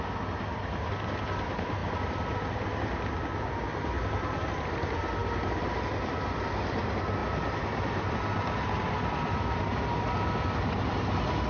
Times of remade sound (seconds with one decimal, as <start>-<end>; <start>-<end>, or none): none